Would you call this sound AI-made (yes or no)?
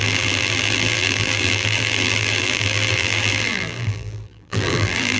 yes